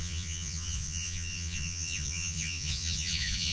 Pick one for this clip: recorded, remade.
remade